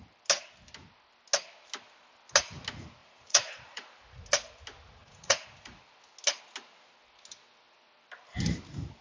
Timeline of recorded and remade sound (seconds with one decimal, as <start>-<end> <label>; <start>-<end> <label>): 0.0-3.0 recorded; 3.0-4.2 remade; 4.2-5.0 recorded; 5.0-5.8 remade; 5.8-9.0 recorded